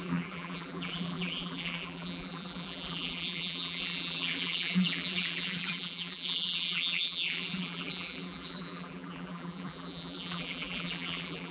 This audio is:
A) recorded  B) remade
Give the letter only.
B